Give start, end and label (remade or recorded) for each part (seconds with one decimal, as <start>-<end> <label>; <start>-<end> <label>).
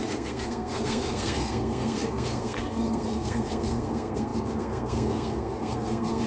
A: 0.0-6.3 remade